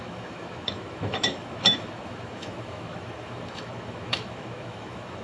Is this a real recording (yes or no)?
no